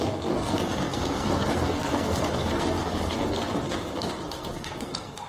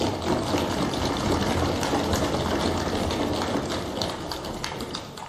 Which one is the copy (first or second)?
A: first